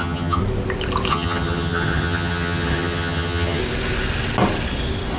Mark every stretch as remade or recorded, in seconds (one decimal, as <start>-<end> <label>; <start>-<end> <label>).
0.0-0.4 remade; 0.4-1.1 recorded; 1.1-3.6 remade; 3.6-5.2 recorded

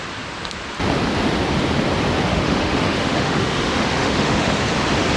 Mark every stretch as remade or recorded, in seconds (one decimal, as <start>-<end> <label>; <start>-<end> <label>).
0.0-2.3 recorded; 2.3-4.6 remade; 4.6-5.2 recorded

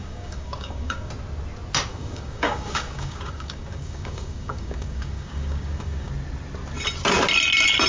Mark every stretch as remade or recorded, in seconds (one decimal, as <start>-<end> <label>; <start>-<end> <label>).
0.0-1.1 remade; 1.1-1.9 recorded; 1.9-6.1 remade; 6.1-7.9 recorded

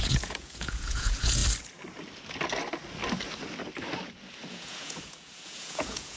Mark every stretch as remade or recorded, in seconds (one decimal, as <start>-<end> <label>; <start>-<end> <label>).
0.0-1.4 remade; 1.4-4.5 recorded; 4.5-6.2 remade

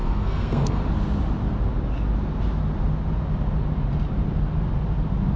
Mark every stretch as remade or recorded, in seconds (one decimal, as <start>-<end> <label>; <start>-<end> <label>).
0.0-0.8 remade; 0.8-5.4 recorded

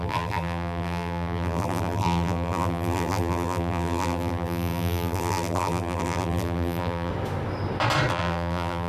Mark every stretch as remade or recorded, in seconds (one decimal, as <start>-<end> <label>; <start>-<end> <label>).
0.0-7.1 remade; 7.1-8.1 recorded; 8.1-8.9 remade

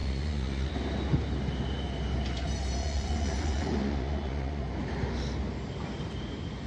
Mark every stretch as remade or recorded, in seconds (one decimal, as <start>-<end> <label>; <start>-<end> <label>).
0.0-0.7 remade; 0.7-2.8 recorded; 2.8-4.6 remade; 4.6-6.7 recorded

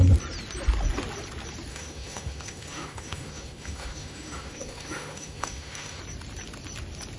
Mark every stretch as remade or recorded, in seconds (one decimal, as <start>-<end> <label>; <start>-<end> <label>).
0.0-1.7 recorded; 1.7-6.0 remade; 6.0-7.2 recorded